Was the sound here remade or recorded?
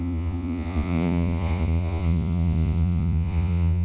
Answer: remade